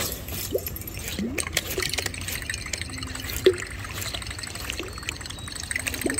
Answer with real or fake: real